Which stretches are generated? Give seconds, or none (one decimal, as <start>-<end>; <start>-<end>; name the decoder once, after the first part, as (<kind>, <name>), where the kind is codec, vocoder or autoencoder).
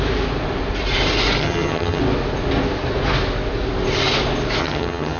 1.4-2.0 (vocoder, HiFi-GAN); 4.6-5.2